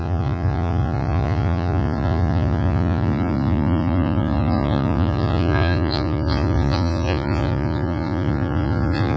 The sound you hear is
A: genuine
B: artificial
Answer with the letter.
B